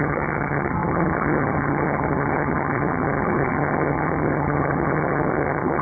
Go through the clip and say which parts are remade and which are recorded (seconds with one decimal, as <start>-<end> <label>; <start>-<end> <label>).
0.0-5.8 remade